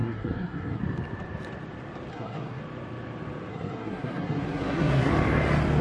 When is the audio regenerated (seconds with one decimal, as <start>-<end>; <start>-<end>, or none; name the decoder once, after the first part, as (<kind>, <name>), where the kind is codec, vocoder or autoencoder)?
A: 0.0-0.8 (codec, SNAC); 2.1-2.6; 3.5-5.1